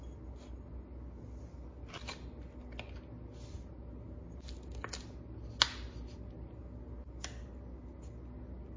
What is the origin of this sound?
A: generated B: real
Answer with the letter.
B